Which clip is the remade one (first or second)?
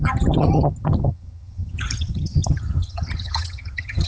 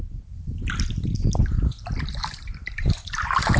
first